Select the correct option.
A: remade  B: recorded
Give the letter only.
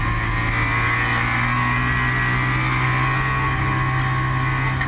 B